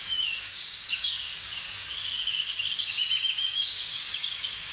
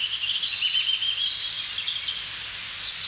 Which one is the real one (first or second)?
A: second